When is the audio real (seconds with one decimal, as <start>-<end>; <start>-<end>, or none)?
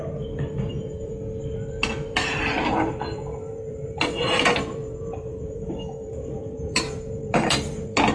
1.1-1.9